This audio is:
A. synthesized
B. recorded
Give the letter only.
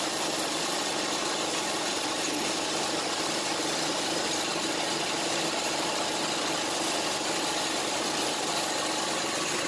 B